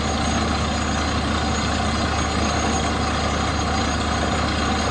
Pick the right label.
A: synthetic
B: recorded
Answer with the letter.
B